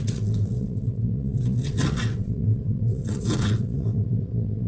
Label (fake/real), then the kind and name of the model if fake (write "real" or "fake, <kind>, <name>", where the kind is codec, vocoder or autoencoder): fake, vocoder, WaveNeXt